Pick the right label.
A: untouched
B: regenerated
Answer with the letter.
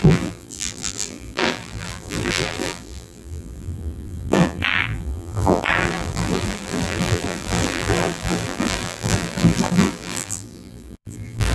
B